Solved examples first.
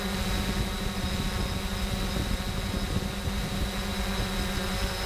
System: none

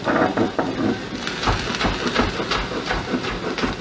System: none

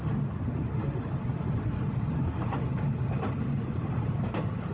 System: none